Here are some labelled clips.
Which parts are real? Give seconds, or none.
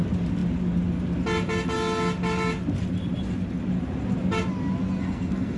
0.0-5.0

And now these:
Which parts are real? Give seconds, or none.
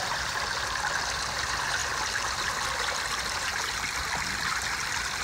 0.0-5.2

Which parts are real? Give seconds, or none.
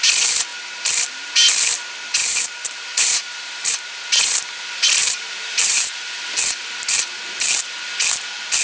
0.0-2.2; 3.7-5.0; 6.3-8.6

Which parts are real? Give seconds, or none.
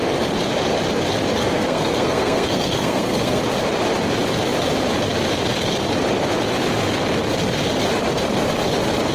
0.0-1.4; 3.4-9.1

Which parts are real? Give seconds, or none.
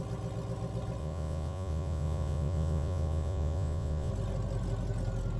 0.0-1.0; 4.1-5.4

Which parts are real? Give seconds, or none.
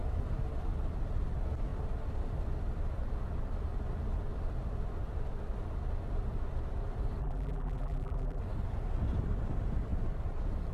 0.0-7.2; 8.4-10.7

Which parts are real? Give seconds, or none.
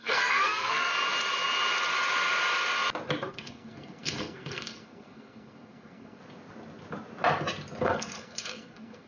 0.9-3.3; 6.2-7.8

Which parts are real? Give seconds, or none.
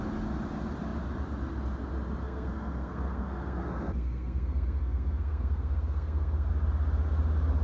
0.0-2.2; 6.5-7.6